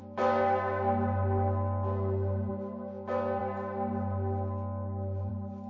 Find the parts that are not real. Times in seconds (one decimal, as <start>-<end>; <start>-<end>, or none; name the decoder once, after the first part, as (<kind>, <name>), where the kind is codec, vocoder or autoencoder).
none